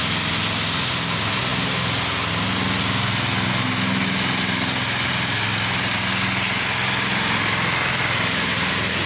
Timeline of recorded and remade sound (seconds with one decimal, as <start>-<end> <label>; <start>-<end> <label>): 0.0-9.1 recorded